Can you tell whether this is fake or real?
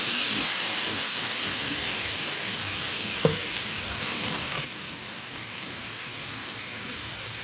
fake